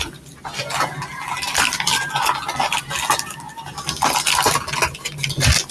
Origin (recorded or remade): recorded